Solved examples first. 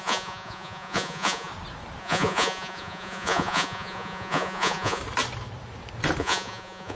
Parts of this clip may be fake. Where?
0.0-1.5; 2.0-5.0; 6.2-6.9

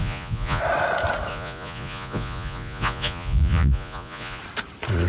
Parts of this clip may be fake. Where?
0.0-0.6; 1.3-4.4

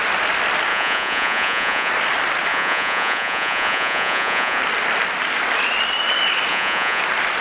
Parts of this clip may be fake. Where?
0.7-1.9; 2.5-4.6; 6.5-7.0

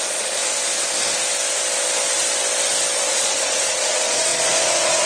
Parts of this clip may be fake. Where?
0.0-0.4; 3.1-5.1